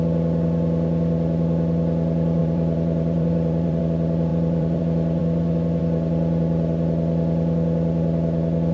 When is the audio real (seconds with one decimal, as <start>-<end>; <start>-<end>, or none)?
0.0-2.4; 3.8-4.3; 4.8-8.7